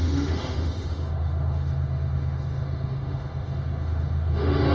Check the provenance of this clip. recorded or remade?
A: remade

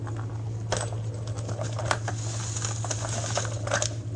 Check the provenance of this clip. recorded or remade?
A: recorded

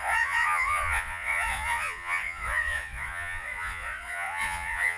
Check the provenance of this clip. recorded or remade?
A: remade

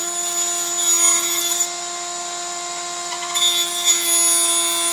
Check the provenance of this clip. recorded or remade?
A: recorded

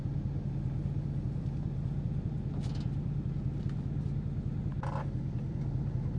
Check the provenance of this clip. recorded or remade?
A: remade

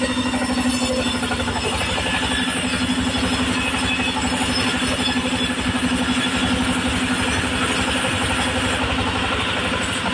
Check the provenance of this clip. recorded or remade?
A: recorded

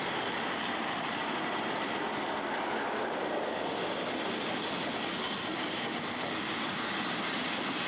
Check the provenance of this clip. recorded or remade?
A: recorded